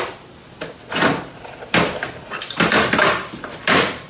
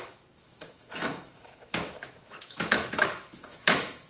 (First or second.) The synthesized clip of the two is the second